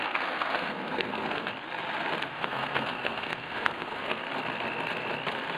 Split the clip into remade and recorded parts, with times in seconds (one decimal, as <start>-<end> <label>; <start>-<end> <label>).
0.0-1.5 remade; 1.5-2.3 recorded; 2.3-4.2 remade; 4.2-5.6 recorded